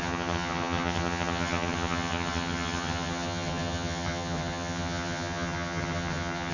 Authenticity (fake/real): fake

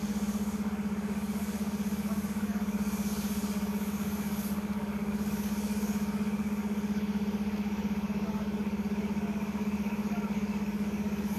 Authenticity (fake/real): fake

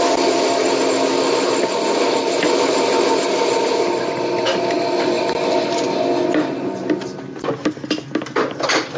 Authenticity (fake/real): real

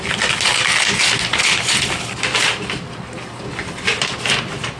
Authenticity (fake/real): real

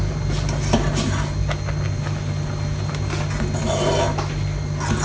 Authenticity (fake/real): real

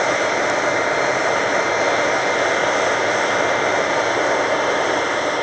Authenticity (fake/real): real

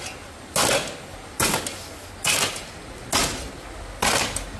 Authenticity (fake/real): real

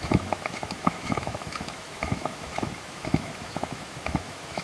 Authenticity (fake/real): fake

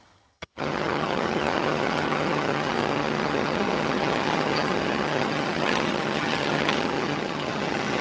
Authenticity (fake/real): fake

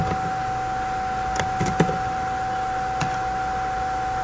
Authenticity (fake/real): real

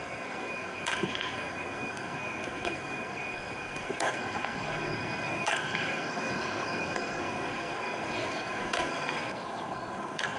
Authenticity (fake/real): fake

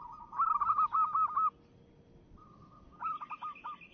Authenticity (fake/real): real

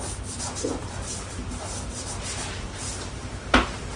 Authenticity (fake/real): fake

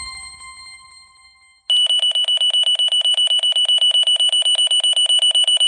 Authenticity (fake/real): real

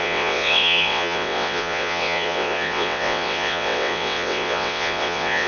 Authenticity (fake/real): fake